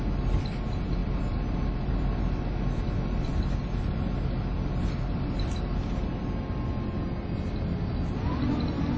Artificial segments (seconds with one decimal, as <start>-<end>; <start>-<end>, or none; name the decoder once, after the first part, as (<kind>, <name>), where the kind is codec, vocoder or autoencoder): 1.0-2.1 (vocoder, BigVGAN v2)